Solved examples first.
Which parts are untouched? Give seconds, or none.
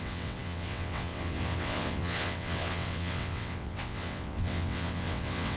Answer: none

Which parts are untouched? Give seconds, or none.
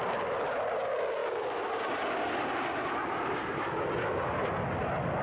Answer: 0.0-5.2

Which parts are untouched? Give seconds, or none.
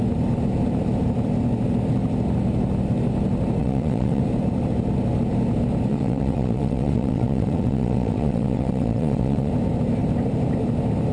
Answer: 0.0-3.6; 4.2-5.9; 9.5-11.1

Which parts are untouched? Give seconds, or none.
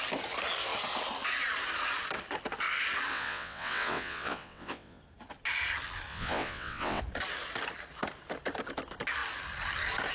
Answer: 0.0-3.1; 5.0-6.1; 7.0-10.1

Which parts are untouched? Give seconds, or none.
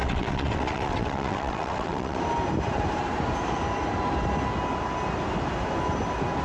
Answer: 2.2-6.4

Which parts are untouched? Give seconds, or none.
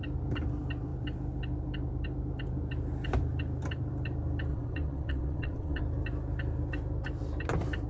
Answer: 0.0-4.5; 5.8-7.9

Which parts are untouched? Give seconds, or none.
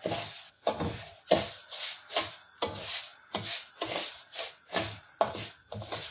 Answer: 0.0-6.1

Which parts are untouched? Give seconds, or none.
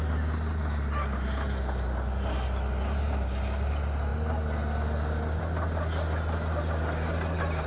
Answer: 0.0-7.7